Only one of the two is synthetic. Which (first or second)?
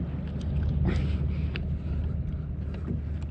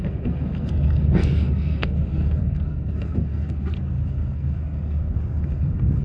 second